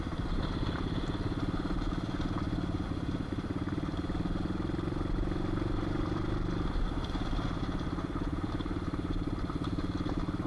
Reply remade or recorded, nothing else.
recorded